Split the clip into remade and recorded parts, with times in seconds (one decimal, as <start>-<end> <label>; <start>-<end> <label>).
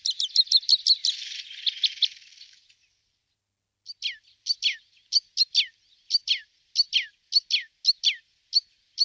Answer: 0.0-9.0 recorded